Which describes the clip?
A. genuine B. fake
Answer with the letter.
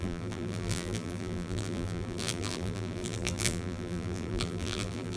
B